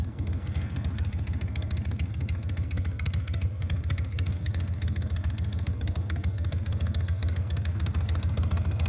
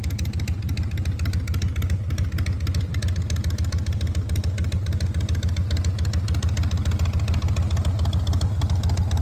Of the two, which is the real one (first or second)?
second